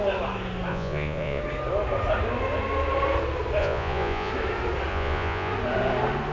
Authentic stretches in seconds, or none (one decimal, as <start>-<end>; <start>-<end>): 0.0-0.7; 1.4-3.6; 4.3-4.9; 5.5-6.3